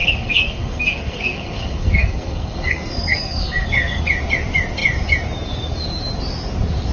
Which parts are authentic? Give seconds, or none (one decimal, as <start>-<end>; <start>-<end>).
4.0-6.9